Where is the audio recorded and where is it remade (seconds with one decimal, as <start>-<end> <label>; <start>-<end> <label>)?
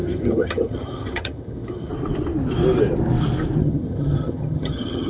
0.0-1.9 remade; 1.9-3.6 recorded; 3.6-5.1 remade